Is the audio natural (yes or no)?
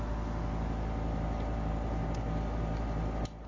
yes